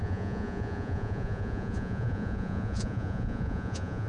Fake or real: fake